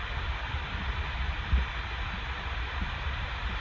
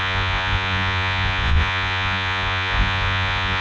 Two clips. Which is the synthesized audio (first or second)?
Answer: second